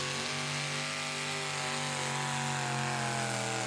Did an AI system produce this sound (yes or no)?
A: no